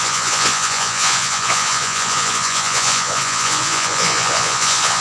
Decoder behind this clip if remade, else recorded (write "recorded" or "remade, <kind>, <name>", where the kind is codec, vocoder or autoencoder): remade, vocoder, Vocos